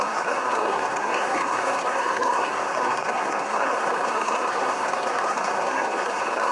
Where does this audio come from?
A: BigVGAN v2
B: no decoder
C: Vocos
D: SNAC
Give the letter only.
D